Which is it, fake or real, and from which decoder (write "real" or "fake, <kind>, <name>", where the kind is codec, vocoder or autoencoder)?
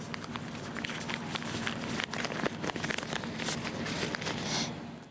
real